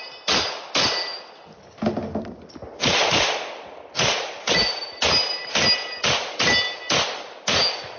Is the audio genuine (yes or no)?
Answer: yes